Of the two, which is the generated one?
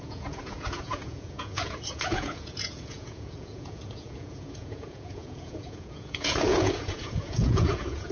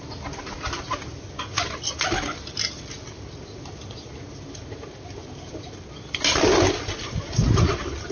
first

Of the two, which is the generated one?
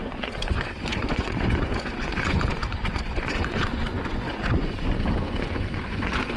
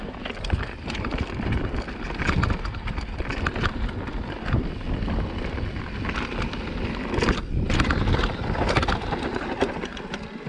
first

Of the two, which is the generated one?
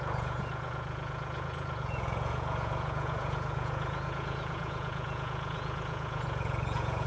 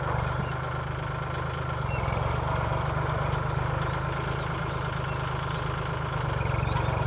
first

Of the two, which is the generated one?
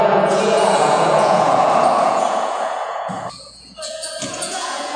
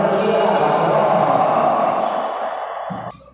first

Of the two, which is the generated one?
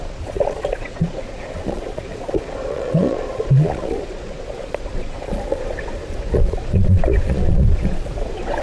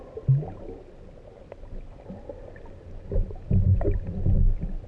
first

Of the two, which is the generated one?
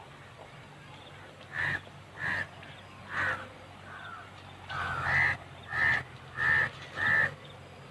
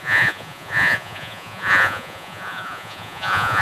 second